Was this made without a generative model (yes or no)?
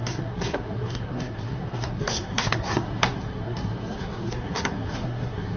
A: no